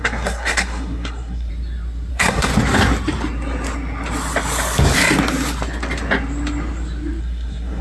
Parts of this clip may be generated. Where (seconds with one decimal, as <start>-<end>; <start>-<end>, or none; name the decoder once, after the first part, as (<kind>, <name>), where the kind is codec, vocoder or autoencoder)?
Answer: 0.0-1.5 (codec, SNAC); 2.1-2.5; 7.2-7.8